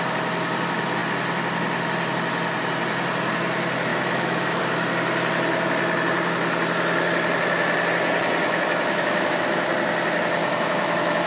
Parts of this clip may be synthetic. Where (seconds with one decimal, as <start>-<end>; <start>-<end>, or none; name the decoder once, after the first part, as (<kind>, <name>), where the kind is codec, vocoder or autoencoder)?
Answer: 3.9-4.6 (autoencoder, DAC-VAE); 8.4-9.7; 10.4-11.3